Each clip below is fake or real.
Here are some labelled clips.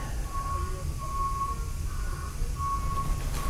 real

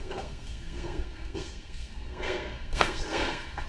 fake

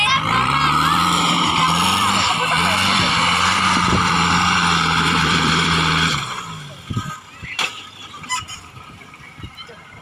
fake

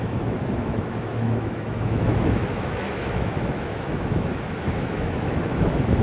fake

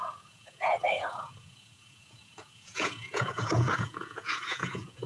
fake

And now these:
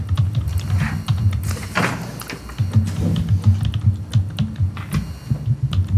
real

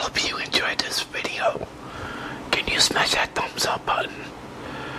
real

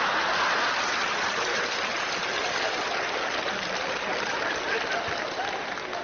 real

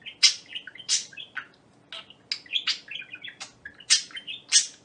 real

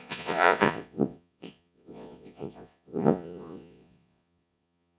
fake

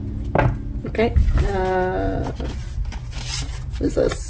real